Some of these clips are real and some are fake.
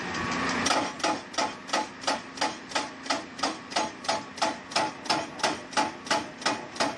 real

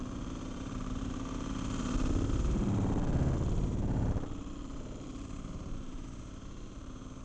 fake